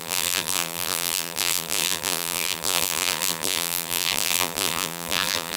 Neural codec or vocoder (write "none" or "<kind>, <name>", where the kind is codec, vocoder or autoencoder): vocoder, BigVGAN v2